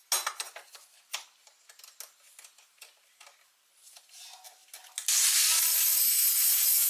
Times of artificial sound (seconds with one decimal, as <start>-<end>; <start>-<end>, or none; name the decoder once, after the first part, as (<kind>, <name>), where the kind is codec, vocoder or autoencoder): none